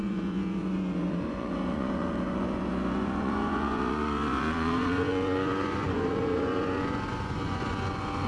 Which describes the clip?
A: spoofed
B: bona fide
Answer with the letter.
A